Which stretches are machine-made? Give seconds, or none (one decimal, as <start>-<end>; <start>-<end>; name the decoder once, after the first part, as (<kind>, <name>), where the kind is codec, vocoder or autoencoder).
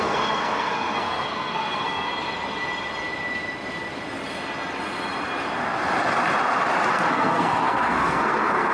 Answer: 0.0-2.1 (codec, SNAC); 6.9-8.7